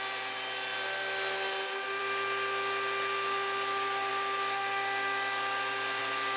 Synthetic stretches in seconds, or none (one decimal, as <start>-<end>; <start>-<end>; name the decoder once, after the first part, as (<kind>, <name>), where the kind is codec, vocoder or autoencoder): none